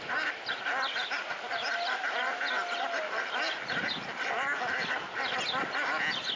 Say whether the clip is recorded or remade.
recorded